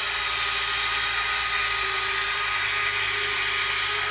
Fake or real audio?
real